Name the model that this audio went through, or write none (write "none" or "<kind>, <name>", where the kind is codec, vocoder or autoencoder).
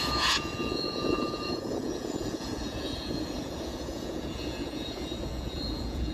vocoder, Vocos